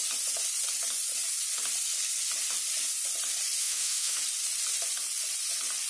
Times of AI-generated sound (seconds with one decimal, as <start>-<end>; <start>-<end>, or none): 3.6-4.2

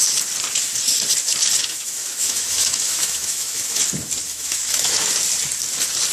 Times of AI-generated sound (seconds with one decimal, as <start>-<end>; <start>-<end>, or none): 1.6-3.8; 4.3-5.1

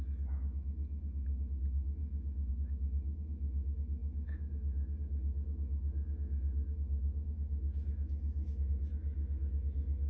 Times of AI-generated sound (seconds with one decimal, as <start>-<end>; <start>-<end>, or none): 0.0-10.1

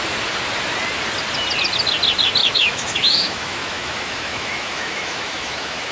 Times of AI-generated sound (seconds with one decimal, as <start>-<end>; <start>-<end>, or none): 2.4-5.9

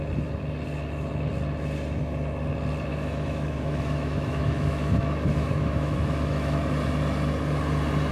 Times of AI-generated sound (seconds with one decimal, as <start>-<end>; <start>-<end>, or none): 2.9-6.6

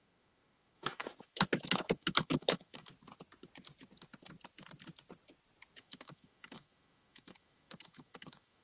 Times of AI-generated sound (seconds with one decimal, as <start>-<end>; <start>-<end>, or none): 0.0-2.9; 5.8-8.6